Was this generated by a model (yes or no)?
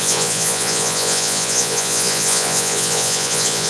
yes